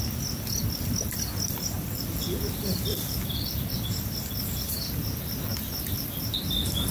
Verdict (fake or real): real